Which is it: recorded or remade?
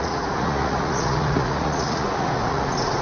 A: remade